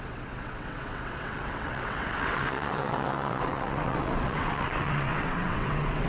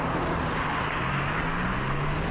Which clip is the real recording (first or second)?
second